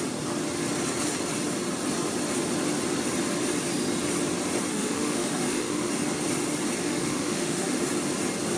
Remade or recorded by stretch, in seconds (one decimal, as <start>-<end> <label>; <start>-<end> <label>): 0.0-4.7 recorded; 4.7-5.9 remade; 5.9-6.8 recorded; 6.8-7.8 remade; 7.8-8.6 recorded

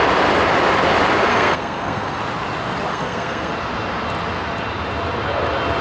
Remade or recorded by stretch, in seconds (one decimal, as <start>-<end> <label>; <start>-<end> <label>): 0.0-1.3 recorded; 1.3-2.2 remade; 2.2-2.9 recorded; 2.9-3.5 remade; 3.5-5.8 recorded